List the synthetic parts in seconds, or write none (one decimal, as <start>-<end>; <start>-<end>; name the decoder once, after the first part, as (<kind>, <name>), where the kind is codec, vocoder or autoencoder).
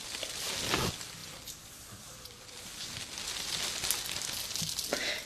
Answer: none